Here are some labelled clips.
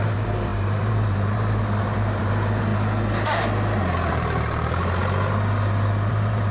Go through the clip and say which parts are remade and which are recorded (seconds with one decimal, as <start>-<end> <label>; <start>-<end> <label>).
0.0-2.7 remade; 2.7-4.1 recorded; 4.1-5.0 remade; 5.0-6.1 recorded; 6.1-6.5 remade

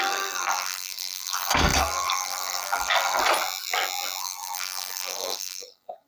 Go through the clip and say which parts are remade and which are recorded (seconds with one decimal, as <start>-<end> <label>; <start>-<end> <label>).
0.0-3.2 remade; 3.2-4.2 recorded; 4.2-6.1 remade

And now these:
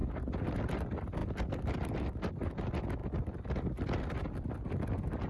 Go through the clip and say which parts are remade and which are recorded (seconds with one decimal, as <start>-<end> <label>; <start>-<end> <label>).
0.0-1.2 recorded; 1.2-2.3 remade; 2.3-5.3 recorded

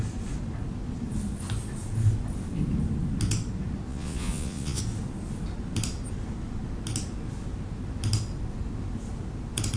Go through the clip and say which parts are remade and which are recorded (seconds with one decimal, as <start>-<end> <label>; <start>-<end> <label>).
0.0-3.9 recorded; 3.9-4.8 remade; 4.8-9.8 recorded

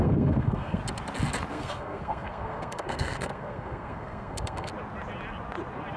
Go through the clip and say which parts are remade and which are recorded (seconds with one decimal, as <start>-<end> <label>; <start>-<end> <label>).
0.0-0.8 remade; 0.8-1.5 recorded; 1.5-4.7 remade; 4.7-6.0 recorded

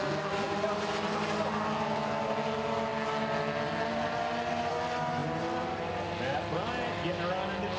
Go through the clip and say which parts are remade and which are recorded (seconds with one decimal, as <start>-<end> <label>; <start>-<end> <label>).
0.0-7.8 recorded

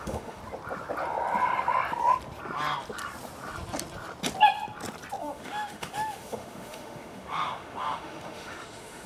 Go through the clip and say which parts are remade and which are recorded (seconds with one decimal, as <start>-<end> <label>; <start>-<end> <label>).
0.0-0.4 remade; 0.4-5.2 recorded; 5.2-9.1 remade

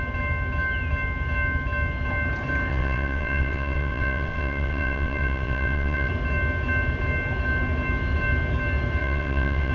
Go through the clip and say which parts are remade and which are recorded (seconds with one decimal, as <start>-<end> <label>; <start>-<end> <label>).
0.0-2.7 recorded; 2.7-6.1 remade; 6.1-9.0 recorded; 9.0-9.7 remade